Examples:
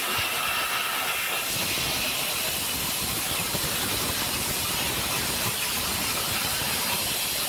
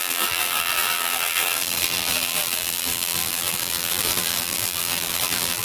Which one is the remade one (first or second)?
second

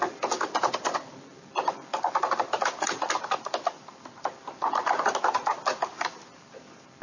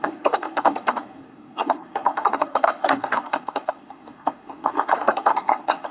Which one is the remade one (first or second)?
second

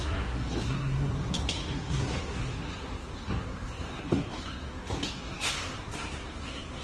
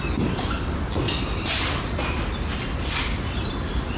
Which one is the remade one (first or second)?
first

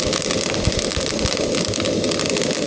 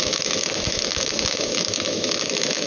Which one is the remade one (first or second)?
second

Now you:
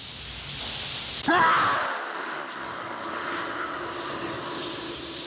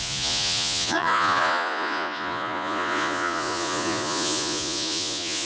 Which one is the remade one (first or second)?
second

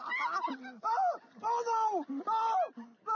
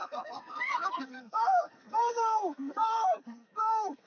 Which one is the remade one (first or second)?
second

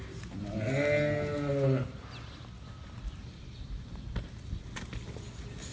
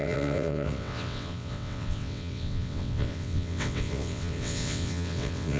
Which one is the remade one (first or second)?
second